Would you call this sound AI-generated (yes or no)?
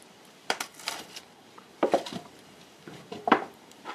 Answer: yes